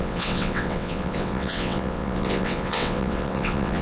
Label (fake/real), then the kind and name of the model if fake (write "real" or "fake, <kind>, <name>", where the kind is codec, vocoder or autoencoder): fake, vocoder, WaveNeXt